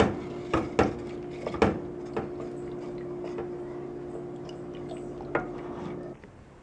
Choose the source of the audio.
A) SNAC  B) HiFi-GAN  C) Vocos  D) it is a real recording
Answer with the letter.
D